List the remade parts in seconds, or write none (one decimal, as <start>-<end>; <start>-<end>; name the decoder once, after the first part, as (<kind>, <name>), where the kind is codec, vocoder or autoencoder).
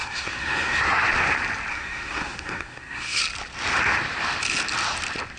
0.0-1.1 (codec, SNAC); 1.7-3.2